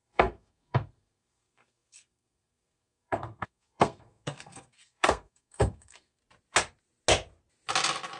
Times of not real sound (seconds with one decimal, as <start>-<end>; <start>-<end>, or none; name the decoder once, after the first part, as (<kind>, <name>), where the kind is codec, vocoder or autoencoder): 0.0-6.2 (codec, SNAC)